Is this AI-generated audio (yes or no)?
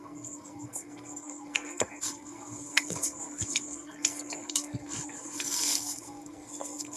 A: yes